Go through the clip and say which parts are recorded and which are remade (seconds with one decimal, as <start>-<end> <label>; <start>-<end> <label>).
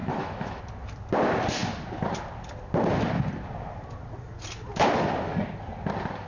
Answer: 0.0-0.6 remade; 0.6-6.3 recorded